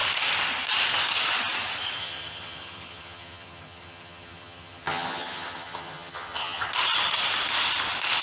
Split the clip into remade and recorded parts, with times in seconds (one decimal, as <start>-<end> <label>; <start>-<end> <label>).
0.0-2.0 recorded; 2.0-6.7 remade; 6.7-8.2 recorded